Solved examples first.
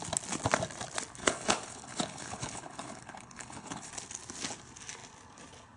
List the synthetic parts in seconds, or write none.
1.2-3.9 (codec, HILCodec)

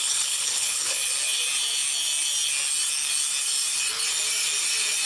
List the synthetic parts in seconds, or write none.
0.0-1.0 (codec, HILCodec)

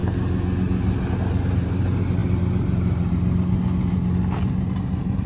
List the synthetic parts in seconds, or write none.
none